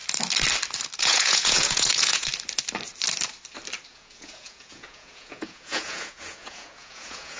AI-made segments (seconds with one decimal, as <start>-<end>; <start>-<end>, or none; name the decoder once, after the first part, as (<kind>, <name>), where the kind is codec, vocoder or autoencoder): 1.0-2.3 (vocoder, Vocos); 3.9-7.4